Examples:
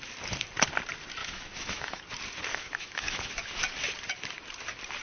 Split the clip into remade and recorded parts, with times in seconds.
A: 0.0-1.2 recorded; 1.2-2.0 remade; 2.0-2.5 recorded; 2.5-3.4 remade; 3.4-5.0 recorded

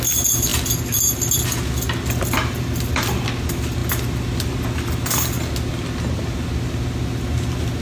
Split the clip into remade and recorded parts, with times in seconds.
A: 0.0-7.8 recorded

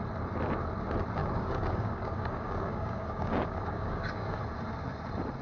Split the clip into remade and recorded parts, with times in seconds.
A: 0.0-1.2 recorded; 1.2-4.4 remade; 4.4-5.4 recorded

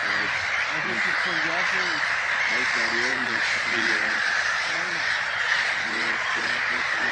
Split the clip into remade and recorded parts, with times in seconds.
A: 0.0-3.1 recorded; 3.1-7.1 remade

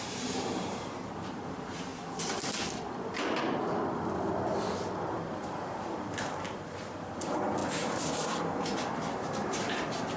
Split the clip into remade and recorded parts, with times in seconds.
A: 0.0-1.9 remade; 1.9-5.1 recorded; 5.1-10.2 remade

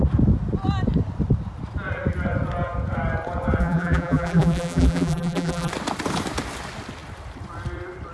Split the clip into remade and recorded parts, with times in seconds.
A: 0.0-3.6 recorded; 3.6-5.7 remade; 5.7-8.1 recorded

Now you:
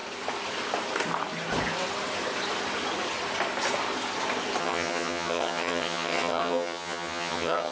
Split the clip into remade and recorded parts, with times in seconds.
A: 0.0-4.6 recorded; 4.6-7.7 remade